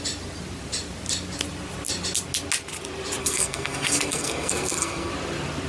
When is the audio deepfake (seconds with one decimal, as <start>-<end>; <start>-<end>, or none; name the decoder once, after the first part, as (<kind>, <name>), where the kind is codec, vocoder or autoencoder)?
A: 3.2-5.1 (codec, SNAC)